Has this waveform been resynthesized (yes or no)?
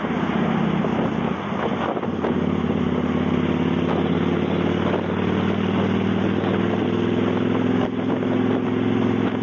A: no